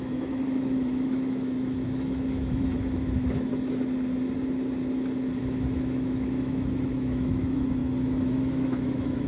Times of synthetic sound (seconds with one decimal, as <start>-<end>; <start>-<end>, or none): 0.0-3.5; 5.4-9.3